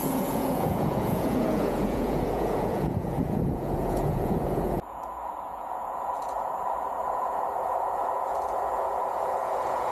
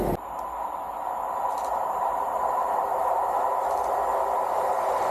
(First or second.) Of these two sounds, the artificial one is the first